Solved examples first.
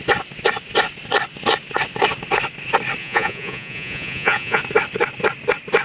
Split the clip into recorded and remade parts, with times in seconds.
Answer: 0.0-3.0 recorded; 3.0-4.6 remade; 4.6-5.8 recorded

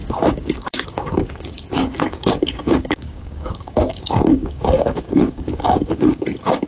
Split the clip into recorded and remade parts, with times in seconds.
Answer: 0.0-6.7 remade

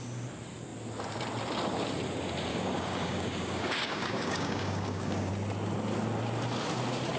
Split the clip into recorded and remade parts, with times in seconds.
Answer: 0.0-2.5 recorded; 2.5-5.3 remade; 5.3-7.2 recorded